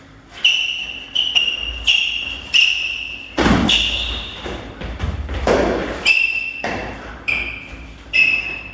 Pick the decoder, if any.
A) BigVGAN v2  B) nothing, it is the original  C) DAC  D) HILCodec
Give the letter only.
A